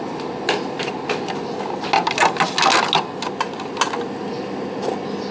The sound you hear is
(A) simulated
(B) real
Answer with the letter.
B